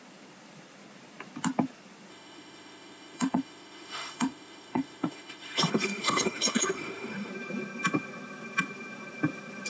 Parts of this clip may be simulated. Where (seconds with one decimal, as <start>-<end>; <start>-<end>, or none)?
2.1-7.3